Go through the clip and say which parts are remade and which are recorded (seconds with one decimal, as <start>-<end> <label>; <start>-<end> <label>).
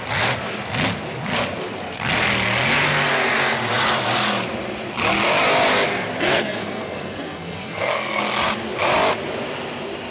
0.0-6.3 recorded; 6.3-8.2 remade; 8.2-10.1 recorded